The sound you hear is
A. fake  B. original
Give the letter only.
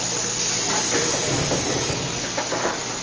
B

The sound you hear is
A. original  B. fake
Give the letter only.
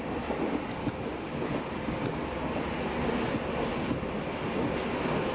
A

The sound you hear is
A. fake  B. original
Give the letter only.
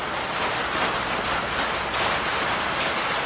B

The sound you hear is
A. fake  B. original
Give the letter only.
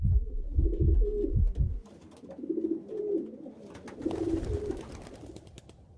B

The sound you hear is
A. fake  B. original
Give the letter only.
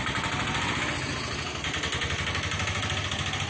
B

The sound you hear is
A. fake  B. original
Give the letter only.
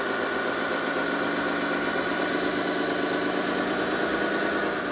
B